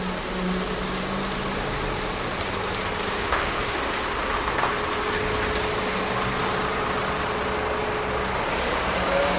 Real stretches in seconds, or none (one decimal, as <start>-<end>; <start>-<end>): 0.0-3.2; 3.8-9.4